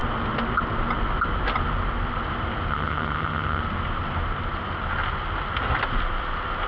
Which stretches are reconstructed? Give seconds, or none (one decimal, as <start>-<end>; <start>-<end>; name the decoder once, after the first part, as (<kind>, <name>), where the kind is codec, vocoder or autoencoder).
2.7-3.6 (vocoder, HiFi-GAN)